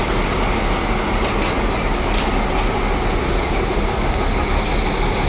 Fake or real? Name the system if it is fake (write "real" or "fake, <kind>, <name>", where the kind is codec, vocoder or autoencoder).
real